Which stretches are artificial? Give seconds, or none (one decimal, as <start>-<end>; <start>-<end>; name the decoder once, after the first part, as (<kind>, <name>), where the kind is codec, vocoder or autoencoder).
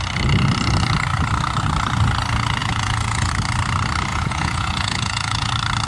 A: 2.6-3.3 (vocoder, Vocos); 4.1-5.5